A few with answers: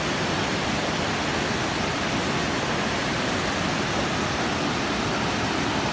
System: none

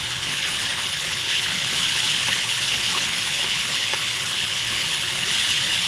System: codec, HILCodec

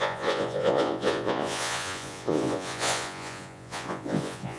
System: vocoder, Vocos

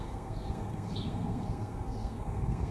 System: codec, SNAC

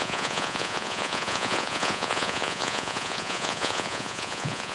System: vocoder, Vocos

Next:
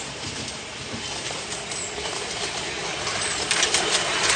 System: none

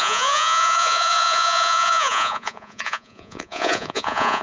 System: vocoder, Vocos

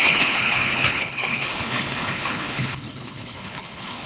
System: codec, HILCodec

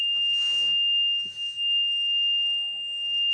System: autoencoder, DAC-VAE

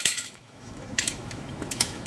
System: autoencoder, DAC-VAE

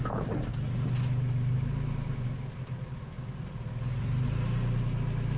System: none